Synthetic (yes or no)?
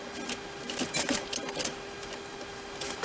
no